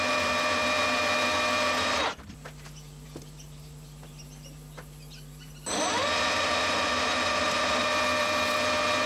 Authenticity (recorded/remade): recorded